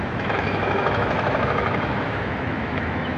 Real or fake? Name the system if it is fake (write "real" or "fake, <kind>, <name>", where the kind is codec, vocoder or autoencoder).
fake, autoencoder, DAC-VAE